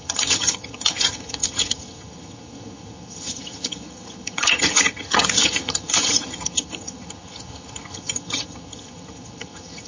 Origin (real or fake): fake